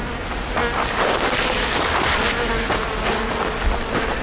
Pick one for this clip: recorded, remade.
recorded